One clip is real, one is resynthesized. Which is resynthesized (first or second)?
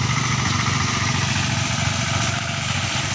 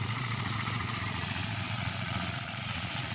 second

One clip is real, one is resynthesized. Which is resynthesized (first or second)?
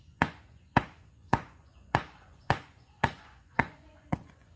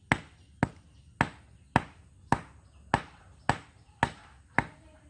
first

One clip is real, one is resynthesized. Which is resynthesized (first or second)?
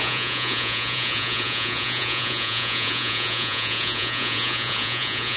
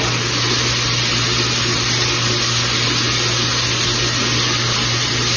first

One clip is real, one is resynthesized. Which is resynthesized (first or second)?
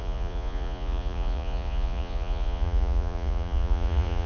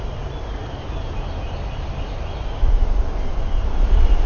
first